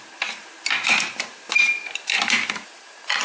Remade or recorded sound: recorded